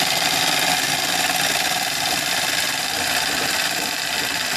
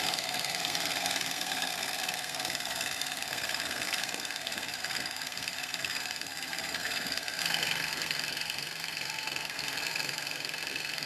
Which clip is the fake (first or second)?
second